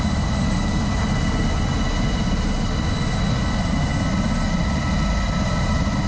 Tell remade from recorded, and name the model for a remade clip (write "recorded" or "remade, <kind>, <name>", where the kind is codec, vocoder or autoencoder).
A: recorded